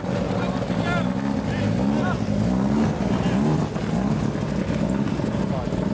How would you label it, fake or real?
real